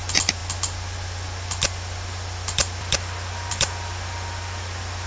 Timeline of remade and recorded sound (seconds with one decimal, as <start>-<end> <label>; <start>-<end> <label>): 0.0-5.1 recorded

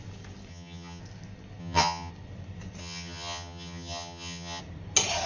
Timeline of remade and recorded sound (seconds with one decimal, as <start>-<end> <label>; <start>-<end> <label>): 0.0-0.5 recorded; 0.5-1.0 remade; 1.0-1.6 recorded; 1.6-2.1 remade; 2.1-2.8 recorded; 2.8-4.6 remade; 4.6-5.3 recorded

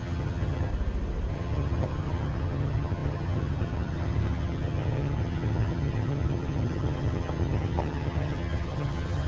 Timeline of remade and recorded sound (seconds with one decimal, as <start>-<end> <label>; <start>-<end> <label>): 0.0-0.7 remade; 0.7-1.3 recorded; 1.3-9.3 remade

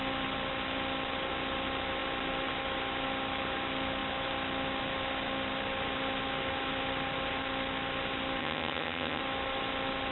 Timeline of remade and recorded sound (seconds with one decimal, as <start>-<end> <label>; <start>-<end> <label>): 0.0-8.4 recorded; 8.4-9.2 remade; 9.2-10.1 recorded

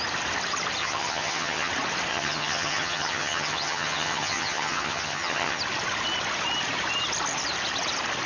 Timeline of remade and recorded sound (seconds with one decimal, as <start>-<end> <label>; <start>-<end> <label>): 0.0-0.8 recorded; 0.8-1.7 remade; 1.7-2.1 recorded; 2.1-5.6 remade; 5.6-8.3 recorded

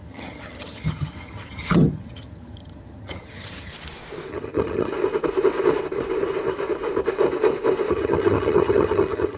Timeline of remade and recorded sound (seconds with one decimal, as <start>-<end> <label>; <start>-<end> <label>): 0.0-3.7 remade; 3.7-4.3 recorded; 4.3-4.9 remade; 4.9-7.9 recorded; 7.9-9.4 remade

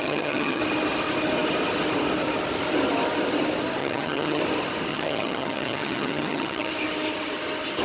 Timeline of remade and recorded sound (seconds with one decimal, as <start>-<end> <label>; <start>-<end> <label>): 0.0-0.6 remade; 0.6-3.8 recorded; 3.8-4.4 remade; 4.4-4.9 recorded; 4.9-6.7 remade; 6.7-7.8 recorded

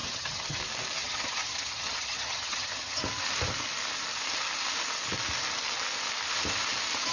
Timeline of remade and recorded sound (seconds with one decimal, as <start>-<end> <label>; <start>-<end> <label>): 0.0-0.6 remade; 0.6-1.0 recorded; 1.0-3.0 remade; 3.0-7.1 recorded